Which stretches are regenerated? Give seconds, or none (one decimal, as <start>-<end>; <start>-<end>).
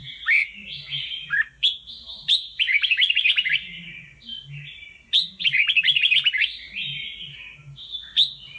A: 0.0-3.3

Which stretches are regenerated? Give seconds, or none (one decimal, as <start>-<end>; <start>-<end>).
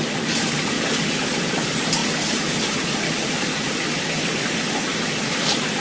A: none